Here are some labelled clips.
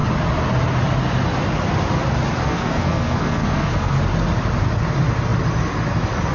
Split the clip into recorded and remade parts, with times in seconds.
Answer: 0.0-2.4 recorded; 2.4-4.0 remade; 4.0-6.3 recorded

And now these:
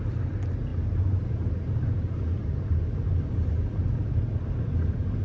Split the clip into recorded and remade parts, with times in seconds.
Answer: 0.0-5.2 recorded